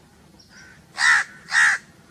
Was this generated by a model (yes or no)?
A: no